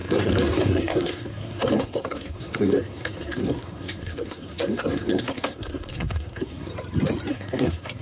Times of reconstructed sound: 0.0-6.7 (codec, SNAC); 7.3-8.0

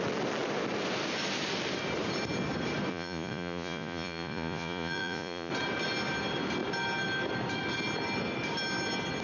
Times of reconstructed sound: 2.9-5.5 (vocoder, Vocos)

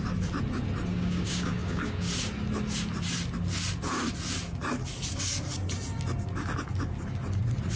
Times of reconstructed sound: 0.9-2.1 (codec, DAC)

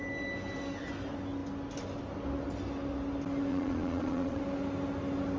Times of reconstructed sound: 3.5-4.4 (vocoder, Vocos)

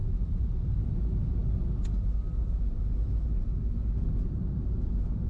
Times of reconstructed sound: 0.0-0.9 (vocoder, BigVGAN v2)

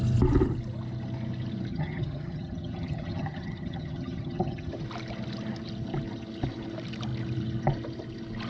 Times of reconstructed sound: 1.7-4.7 (vocoder, HiFi-GAN)

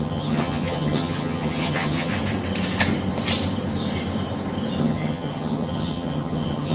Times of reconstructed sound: 0.0-2.1 (vocoder, HiFi-GAN); 4.8-6.7